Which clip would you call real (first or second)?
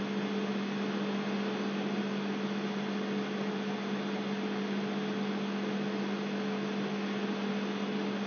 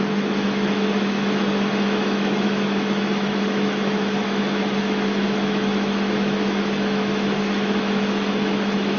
first